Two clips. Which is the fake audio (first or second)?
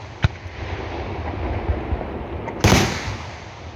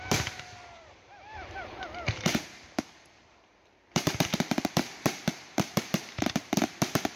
second